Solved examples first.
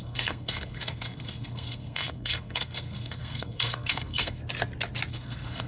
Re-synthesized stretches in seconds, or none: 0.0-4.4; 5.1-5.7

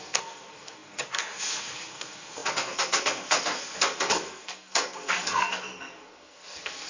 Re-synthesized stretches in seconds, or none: 0.0-6.9